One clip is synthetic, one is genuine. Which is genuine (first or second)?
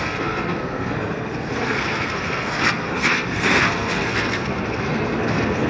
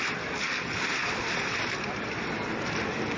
second